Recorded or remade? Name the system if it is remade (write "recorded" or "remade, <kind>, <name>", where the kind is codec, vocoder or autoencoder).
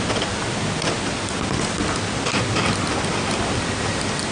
recorded